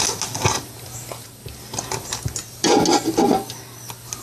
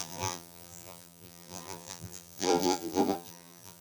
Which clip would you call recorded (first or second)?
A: first